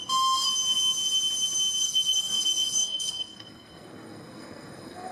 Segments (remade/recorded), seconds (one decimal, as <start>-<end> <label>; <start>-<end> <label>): 0.0-1.8 recorded; 1.8-5.1 remade